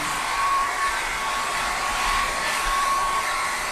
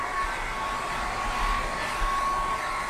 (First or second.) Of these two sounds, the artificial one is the first